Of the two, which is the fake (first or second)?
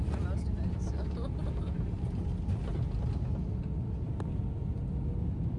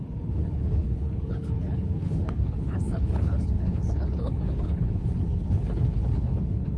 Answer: second